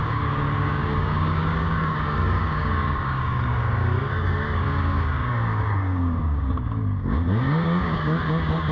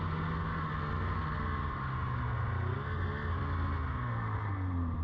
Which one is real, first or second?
second